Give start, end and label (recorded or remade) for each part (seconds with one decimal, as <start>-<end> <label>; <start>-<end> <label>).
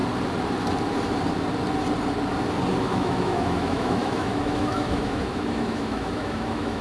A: 0.0-2.8 recorded; 2.8-6.8 remade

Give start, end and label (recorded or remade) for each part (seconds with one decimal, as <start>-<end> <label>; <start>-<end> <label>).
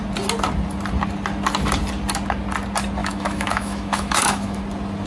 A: 0.0-3.0 recorded; 3.0-4.6 remade; 4.6-5.1 recorded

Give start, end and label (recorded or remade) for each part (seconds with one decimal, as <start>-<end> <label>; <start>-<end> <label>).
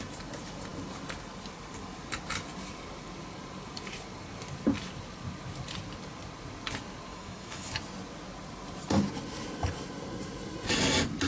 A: 0.0-7.1 recorded; 7.1-7.7 remade; 7.7-11.3 recorded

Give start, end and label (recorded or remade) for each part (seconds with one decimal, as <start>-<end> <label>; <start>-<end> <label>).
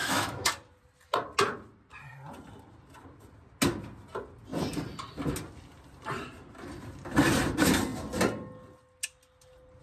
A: 0.0-0.5 remade; 0.5-9.8 recorded